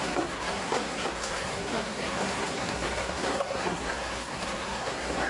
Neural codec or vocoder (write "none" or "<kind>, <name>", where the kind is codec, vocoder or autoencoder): codec, SNAC